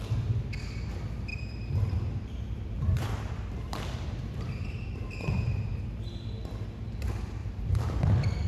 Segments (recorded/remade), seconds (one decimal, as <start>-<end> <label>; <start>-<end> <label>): 0.0-1.3 recorded; 1.3-5.8 remade; 5.8-7.4 recorded; 7.4-8.0 remade; 8.0-8.5 recorded